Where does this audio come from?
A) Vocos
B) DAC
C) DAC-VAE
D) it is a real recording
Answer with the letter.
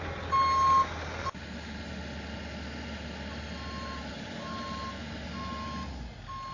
D